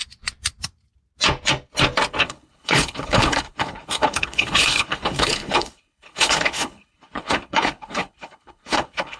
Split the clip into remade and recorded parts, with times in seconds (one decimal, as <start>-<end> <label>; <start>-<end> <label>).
0.0-2.2 recorded; 2.2-9.2 remade